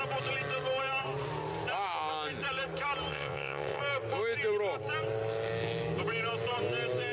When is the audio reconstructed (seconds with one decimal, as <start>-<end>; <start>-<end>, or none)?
3.1-3.8